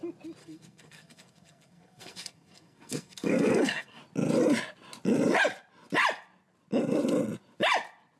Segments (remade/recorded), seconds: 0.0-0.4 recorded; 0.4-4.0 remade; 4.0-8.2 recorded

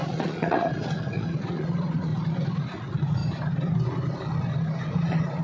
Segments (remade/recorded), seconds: 0.0-2.1 remade; 2.1-2.6 recorded; 2.6-3.2 remade; 3.2-4.9 recorded; 4.9-5.4 remade

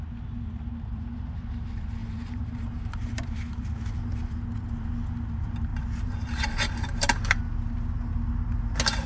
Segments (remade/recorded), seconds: 0.0-2.0 recorded; 2.0-3.8 remade; 3.8-5.7 recorded; 5.7-7.4 remade; 7.4-9.1 recorded